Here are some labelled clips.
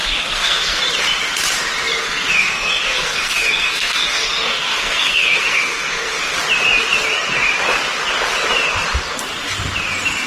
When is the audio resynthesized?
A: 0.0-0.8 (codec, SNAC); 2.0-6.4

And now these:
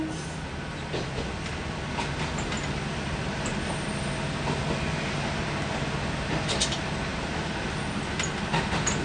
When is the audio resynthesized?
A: none

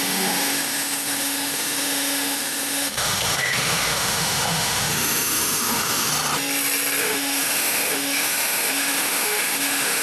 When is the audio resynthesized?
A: 0.0-6.1 (autoencoder, DAC-VAE); 7.0-10.0

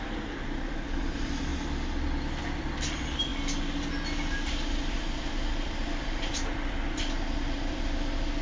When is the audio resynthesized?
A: 0.0-1.5 (vocoder, BigVGAN v2); 2.4-3.3; 4.7-8.4